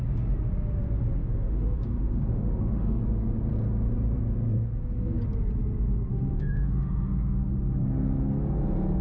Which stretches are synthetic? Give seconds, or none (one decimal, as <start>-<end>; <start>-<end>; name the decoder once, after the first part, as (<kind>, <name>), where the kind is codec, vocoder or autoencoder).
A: 1.2-3.0 (autoencoder, DAC-VAE); 6.1-7.5